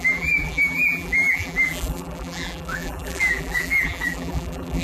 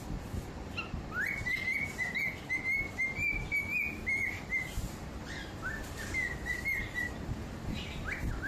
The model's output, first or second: first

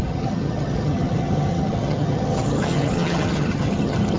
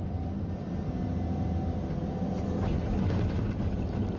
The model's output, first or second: first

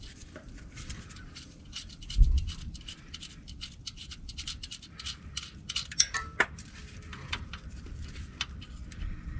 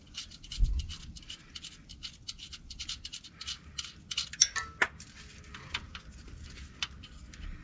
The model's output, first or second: first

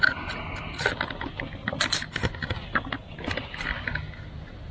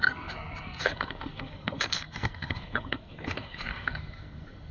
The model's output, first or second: second